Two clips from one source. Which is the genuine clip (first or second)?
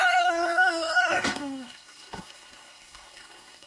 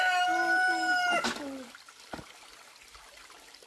second